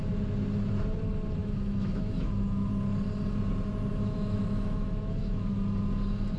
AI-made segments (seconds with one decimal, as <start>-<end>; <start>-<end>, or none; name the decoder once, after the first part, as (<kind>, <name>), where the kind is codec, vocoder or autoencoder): 1.4-2.7 (autoencoder, DAC-VAE); 3.9-5.5